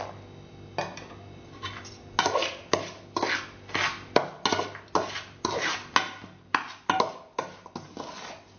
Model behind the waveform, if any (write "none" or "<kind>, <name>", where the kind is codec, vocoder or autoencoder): none